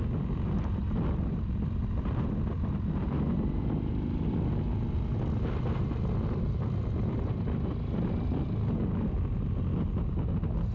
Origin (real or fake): real